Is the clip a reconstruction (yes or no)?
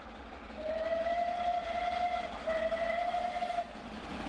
no